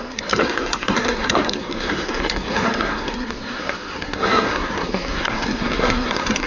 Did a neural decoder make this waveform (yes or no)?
yes